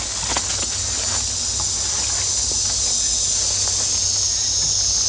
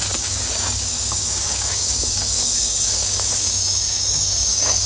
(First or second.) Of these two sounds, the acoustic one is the first